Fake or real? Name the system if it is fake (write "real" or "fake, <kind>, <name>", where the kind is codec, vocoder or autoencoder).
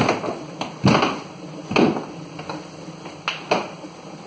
real